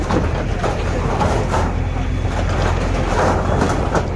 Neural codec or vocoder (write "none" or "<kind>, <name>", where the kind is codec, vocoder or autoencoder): vocoder, BigVGAN v2